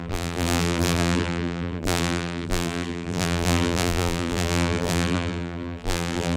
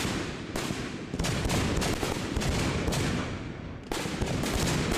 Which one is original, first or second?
second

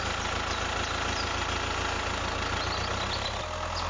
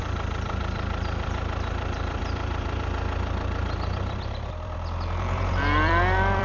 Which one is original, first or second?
first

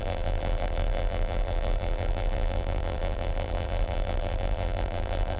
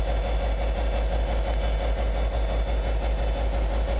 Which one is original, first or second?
second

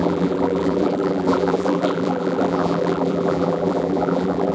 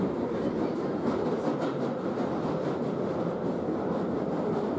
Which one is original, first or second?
second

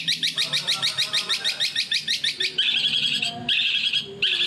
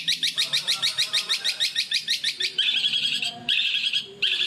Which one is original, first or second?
first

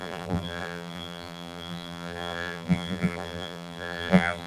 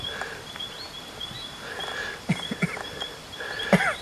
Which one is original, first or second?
second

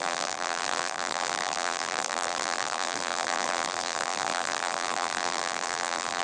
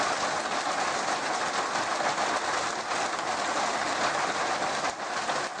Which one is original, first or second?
second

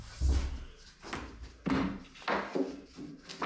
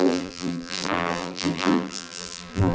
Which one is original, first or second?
first